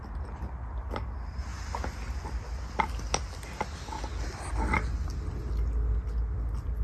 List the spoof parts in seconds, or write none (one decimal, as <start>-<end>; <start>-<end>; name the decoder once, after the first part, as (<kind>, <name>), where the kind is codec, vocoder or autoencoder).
none